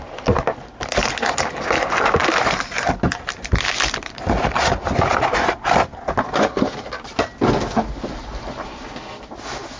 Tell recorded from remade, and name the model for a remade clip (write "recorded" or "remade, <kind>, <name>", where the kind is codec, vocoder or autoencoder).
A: recorded